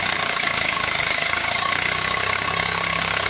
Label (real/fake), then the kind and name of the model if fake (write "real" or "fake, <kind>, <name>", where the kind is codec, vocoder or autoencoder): fake, codec, DAC